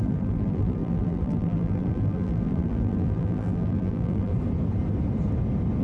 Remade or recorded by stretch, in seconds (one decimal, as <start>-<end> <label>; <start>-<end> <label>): 0.0-4.3 remade; 4.3-5.8 recorded